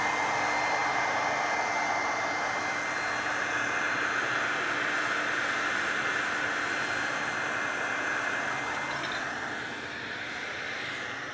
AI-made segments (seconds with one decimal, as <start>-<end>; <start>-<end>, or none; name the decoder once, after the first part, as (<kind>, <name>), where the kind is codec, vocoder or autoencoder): none